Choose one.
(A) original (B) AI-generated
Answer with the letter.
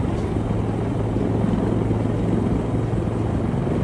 A